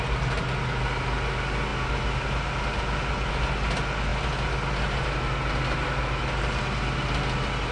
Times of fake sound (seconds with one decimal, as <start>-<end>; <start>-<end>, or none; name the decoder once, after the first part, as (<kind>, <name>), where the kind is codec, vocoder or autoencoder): none